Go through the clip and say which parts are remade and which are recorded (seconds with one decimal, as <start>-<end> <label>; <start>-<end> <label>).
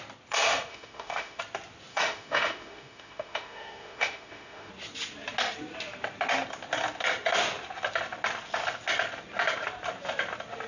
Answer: 0.0-0.7 recorded; 0.7-1.4 remade; 1.4-1.9 recorded; 1.9-4.7 remade; 4.7-10.7 recorded